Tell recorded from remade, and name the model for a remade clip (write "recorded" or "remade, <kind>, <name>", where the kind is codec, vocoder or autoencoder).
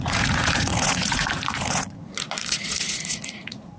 remade, vocoder, Vocos